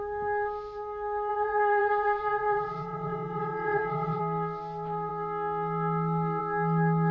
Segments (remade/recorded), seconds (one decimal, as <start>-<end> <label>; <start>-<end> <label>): 0.0-1.3 recorded; 1.3-4.2 remade; 4.2-7.1 recorded